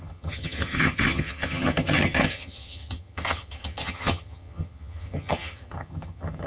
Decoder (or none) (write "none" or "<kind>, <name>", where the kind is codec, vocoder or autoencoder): vocoder, HiFi-GAN